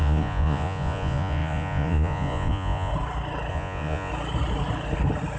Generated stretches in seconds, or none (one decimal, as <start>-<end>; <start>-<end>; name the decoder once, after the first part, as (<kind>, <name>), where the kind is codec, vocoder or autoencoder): 0.0-2.9 (vocoder, Vocos); 3.5-4.1

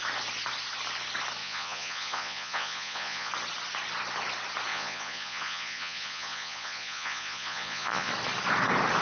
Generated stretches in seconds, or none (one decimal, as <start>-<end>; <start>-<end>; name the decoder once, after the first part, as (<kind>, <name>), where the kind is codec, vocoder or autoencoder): 1.4-3.3 (vocoder, Vocos); 4.7-8.1

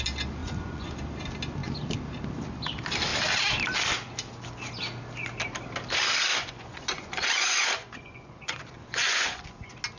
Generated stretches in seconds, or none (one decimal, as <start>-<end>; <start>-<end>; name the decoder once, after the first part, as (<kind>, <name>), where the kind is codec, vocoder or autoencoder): 0.4-0.9 (vocoder, Vocos); 6.3-9.4

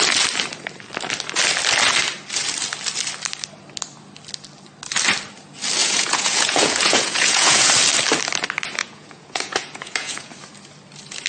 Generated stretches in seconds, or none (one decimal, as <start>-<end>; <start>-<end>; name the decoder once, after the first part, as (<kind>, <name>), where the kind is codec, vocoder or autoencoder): 5.8-7.7 (vocoder, Vocos); 8.8-10.3

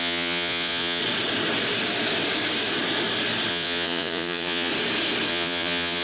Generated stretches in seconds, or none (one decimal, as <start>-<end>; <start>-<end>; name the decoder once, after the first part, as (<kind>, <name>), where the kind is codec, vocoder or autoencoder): 0.0-1.0 (vocoder, Vocos); 3.5-4.7; 5.3-6.0